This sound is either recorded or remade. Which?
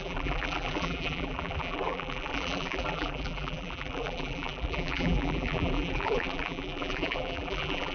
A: remade